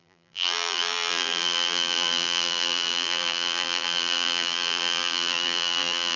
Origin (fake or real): fake